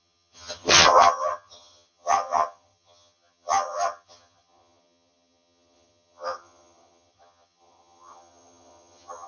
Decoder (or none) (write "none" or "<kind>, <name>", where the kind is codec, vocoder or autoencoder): vocoder, HiFi-GAN